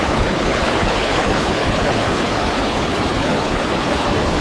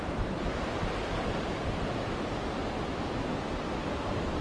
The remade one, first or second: first